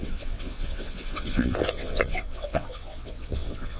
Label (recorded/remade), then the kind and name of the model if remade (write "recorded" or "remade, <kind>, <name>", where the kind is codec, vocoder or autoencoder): remade, vocoder, WaveNeXt